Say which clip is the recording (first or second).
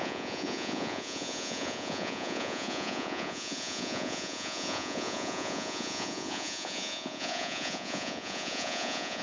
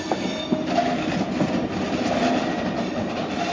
second